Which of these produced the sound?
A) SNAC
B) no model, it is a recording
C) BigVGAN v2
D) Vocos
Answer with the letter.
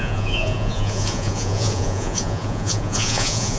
D